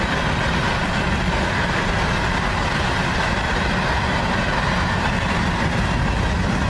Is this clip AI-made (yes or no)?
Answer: no